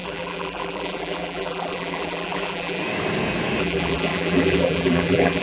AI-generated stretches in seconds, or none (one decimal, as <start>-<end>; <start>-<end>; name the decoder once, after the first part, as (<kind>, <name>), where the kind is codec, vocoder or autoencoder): 0.0-2.8 (vocoder, BigVGAN v2); 3.6-5.4